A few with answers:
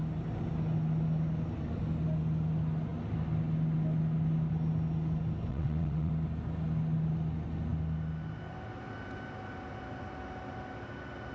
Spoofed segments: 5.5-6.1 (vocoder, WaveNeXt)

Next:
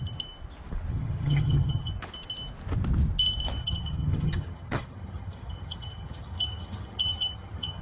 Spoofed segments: 0.9-1.9 (vocoder, HiFi-GAN); 3.6-7.8